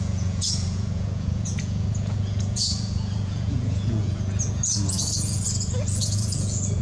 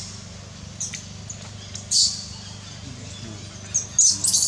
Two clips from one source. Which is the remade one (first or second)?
first